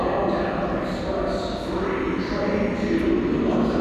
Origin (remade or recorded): recorded